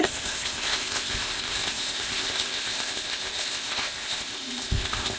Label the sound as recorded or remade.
remade